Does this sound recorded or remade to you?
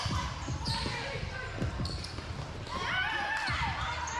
recorded